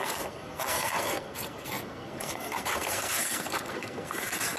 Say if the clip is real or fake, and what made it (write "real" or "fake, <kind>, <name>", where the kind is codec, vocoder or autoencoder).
fake, codec, SNAC